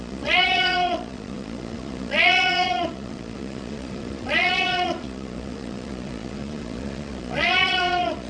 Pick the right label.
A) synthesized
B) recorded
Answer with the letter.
A